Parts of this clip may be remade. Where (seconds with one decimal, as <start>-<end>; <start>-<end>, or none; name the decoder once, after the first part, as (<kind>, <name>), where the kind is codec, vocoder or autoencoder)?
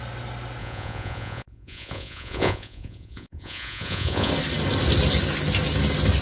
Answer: 0.6-4.3 (vocoder, Vocos)